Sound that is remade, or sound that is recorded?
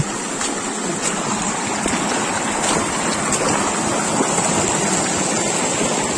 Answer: recorded